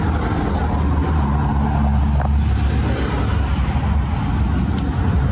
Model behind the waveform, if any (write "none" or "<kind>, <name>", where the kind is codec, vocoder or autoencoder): none